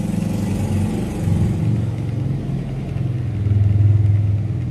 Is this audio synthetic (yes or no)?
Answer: no